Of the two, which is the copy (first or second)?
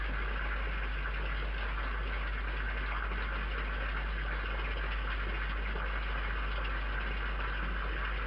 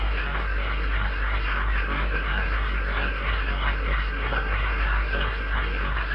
second